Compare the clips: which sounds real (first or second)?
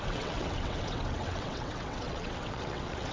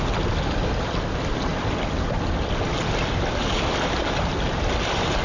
second